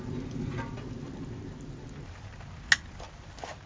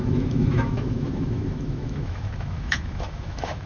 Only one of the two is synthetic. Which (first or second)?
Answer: second